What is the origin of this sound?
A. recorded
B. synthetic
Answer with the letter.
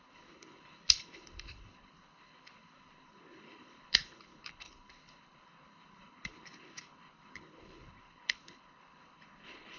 B